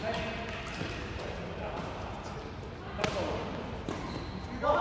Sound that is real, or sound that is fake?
real